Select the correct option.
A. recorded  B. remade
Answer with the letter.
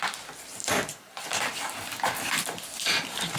B